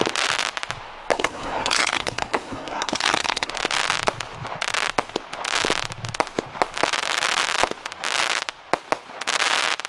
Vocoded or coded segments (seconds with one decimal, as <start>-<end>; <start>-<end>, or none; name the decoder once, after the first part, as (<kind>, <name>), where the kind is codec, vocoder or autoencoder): 1.1-3.5 (codec, SNAC)